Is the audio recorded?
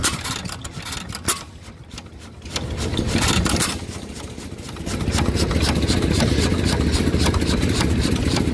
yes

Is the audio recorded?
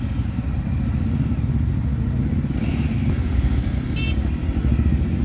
yes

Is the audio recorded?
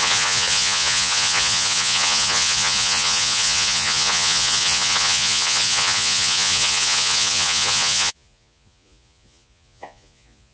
no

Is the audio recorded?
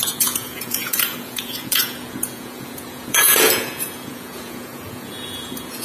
no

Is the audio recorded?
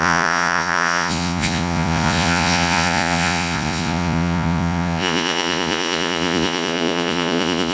no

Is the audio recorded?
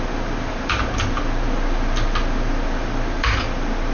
yes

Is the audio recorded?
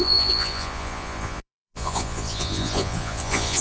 no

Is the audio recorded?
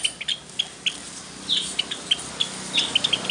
yes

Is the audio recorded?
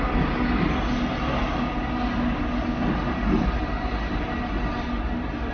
yes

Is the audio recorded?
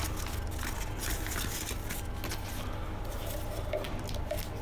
yes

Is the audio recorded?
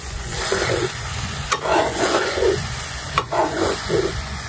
no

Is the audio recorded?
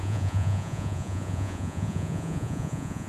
no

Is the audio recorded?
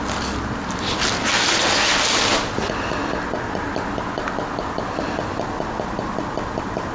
yes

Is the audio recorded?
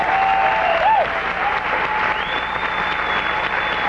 yes